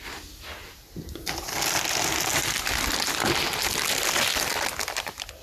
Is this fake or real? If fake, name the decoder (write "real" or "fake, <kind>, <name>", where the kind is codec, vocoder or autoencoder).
real